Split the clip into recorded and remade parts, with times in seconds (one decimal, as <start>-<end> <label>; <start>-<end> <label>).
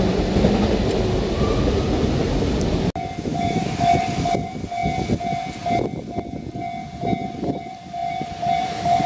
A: 0.0-3.3 recorded; 3.3-4.0 remade; 4.0-9.1 recorded